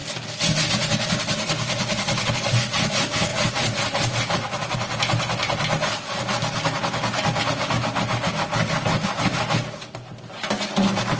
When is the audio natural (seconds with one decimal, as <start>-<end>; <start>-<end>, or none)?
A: 0.0-11.2

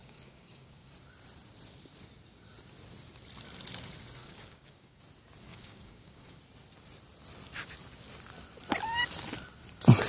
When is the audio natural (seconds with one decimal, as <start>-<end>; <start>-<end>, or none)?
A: 0.9-4.2; 5.0-5.5; 6.4-10.1